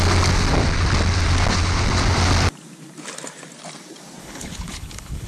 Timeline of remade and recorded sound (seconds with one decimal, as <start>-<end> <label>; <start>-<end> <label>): 0.0-4.2 recorded; 4.2-5.3 remade